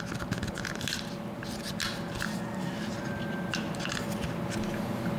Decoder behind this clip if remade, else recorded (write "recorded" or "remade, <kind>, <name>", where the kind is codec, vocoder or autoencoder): recorded